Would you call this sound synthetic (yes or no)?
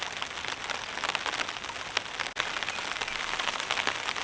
no